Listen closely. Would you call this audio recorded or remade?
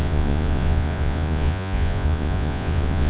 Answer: remade